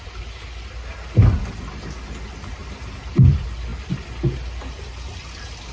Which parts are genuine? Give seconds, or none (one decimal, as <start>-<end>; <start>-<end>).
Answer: 0.0-5.7